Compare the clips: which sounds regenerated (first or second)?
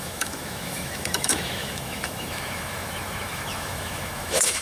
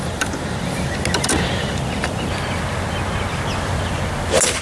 first